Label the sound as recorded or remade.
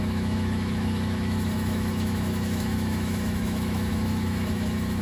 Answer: remade